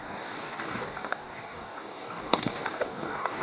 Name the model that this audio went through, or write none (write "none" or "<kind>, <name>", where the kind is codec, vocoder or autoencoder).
codec, DAC